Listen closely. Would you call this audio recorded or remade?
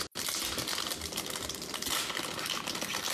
recorded